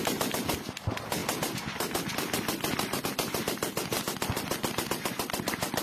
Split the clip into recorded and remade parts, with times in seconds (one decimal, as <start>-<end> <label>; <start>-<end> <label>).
0.0-5.8 recorded